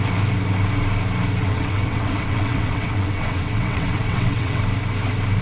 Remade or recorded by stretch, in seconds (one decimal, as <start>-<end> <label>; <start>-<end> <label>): 0.0-1.4 recorded; 1.4-4.6 remade; 4.6-5.4 recorded